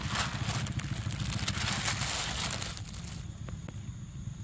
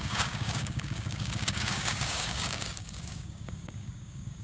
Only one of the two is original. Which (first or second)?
first